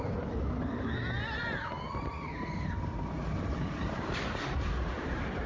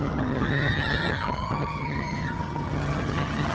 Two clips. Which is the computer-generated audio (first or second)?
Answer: second